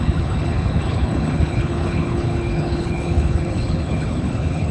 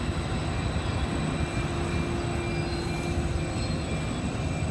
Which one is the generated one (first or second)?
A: first